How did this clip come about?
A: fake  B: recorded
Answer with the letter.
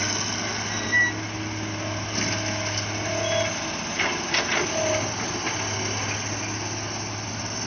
B